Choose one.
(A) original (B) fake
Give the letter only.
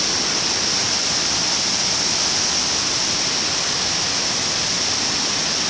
A